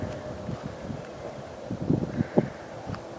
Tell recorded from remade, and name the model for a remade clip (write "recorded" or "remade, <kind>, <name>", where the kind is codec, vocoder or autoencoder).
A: recorded